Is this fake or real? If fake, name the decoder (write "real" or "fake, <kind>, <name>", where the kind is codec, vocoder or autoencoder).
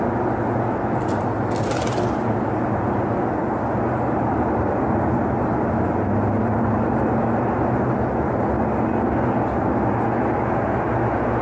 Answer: real